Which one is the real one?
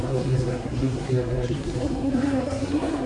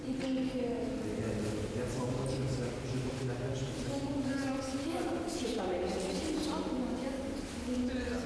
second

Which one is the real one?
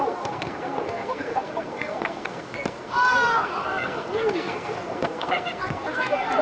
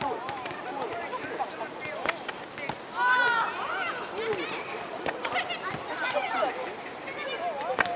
second